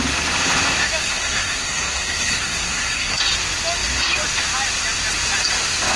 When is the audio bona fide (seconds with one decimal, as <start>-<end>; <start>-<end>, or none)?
0.0-1.0; 3.2-6.0